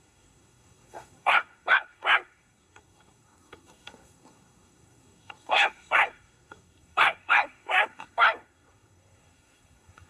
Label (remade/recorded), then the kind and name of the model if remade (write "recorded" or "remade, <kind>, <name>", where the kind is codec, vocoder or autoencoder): remade, codec, SNAC